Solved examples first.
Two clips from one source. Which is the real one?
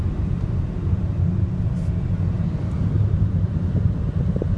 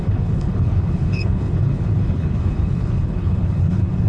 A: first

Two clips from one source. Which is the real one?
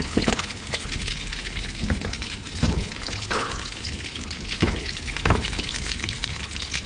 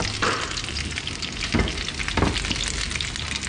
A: second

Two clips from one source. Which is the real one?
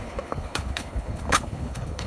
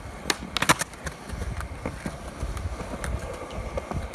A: second